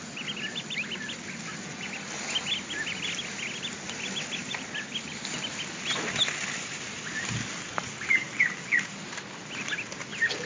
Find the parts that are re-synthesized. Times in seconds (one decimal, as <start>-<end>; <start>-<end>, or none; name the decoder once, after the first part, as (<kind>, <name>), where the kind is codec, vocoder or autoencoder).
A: none